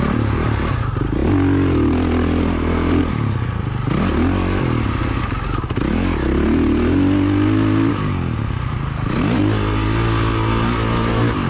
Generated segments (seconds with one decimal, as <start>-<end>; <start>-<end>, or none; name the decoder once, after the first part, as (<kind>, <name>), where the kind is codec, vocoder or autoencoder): none